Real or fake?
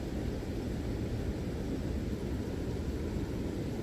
real